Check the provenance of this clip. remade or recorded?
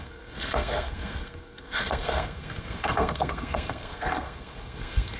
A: remade